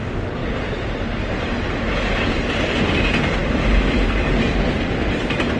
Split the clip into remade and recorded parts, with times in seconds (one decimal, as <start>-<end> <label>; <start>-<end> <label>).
0.0-0.4 recorded; 0.4-2.9 remade; 2.9-5.6 recorded